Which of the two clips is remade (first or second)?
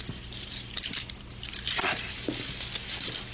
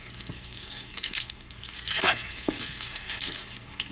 second